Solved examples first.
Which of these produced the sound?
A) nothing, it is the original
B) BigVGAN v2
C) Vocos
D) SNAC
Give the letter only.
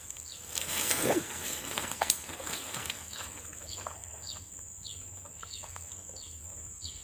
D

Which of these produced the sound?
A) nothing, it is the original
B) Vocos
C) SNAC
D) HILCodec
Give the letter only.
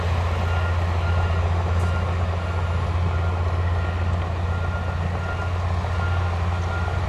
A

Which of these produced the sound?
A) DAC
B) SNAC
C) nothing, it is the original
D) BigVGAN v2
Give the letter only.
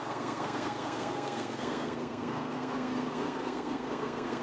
B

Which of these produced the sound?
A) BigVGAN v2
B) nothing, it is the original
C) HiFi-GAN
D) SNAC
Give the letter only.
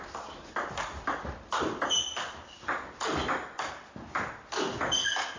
B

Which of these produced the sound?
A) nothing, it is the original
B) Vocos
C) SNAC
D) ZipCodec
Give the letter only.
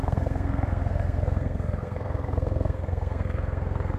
C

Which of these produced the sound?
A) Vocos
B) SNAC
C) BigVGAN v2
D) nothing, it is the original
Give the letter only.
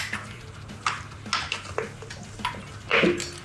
D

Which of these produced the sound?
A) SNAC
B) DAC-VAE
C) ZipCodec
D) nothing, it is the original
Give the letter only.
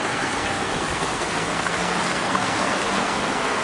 A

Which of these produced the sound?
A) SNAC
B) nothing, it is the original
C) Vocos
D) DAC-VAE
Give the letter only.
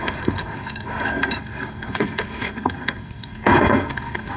A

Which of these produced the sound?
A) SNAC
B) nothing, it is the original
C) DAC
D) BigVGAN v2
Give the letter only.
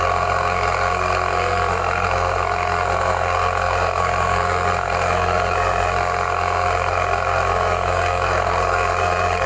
A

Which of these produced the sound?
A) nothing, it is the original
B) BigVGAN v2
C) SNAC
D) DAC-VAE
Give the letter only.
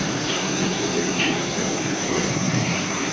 C